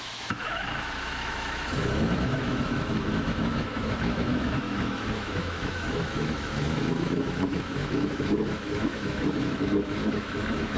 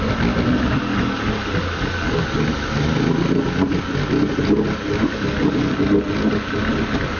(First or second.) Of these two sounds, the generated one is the first